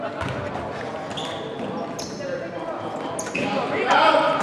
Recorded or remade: recorded